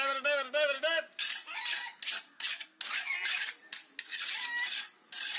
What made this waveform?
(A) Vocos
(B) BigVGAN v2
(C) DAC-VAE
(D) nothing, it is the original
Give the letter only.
D